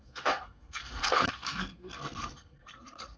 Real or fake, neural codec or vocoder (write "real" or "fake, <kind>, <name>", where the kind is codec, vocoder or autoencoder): fake, codec, SNAC